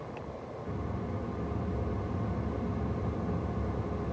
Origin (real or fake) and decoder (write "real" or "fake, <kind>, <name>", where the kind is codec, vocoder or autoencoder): real